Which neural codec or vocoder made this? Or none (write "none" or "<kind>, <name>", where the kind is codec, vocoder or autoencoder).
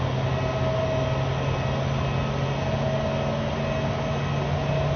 none